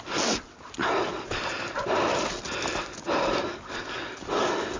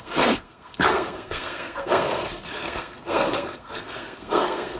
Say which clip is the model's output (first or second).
second